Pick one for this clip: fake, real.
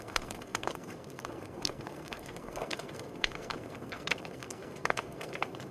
fake